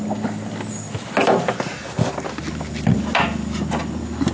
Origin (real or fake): real